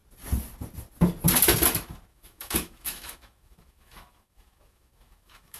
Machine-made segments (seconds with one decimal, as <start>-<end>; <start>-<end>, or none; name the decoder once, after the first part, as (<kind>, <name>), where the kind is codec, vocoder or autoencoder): 2.1-5.6 (autoencoder, DAC-VAE)